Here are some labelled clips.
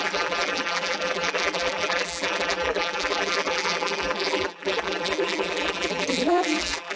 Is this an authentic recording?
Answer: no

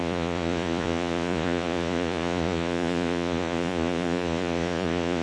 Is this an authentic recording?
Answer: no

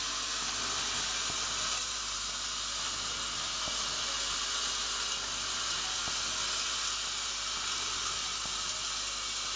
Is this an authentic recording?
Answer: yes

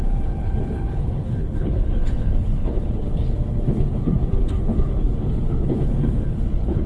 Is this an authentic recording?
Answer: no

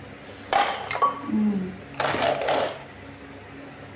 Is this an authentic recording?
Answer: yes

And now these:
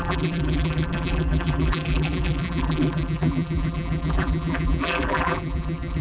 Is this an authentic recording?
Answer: no